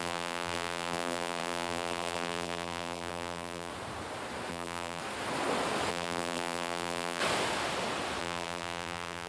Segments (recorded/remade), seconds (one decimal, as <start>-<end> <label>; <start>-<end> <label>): 0.0-3.7 remade; 3.7-4.5 recorded; 4.5-5.0 remade; 5.0-5.9 recorded; 5.9-7.2 remade; 7.2-8.2 recorded; 8.2-9.3 remade